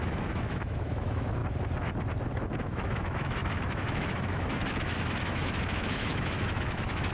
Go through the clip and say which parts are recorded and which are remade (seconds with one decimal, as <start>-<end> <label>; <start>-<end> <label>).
0.0-1.4 remade; 1.4-2.6 recorded; 2.6-7.1 remade